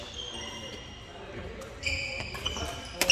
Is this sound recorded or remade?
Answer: recorded